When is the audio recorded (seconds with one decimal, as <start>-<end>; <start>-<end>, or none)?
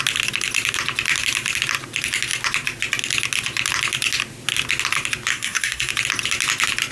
0.0-5.3; 5.9-6.9